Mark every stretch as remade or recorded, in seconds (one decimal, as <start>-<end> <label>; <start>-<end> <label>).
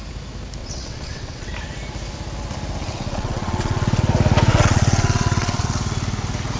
0.0-0.6 recorded; 0.6-1.5 remade; 1.5-2.8 recorded; 2.8-4.0 remade; 4.0-4.5 recorded; 4.5-5.6 remade; 5.6-6.6 recorded